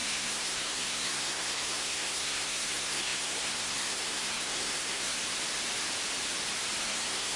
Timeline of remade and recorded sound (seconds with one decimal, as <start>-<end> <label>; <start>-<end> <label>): 0.0-5.2 remade; 5.2-6.8 recorded; 6.8-7.4 remade